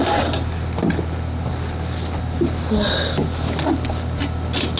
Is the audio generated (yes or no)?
no